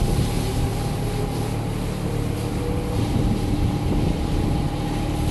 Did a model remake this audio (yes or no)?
no